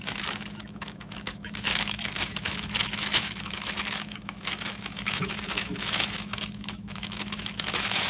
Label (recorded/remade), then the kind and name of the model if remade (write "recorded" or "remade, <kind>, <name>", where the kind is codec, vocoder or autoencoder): remade, autoencoder, DAC-VAE